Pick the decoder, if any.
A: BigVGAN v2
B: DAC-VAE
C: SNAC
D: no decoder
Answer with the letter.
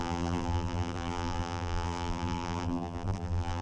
A